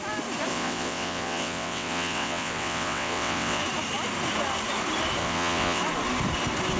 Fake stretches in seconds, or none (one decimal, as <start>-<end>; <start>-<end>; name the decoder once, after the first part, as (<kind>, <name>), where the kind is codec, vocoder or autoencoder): 0.5-3.6 (vocoder, WaveNeXt); 5.2-5.8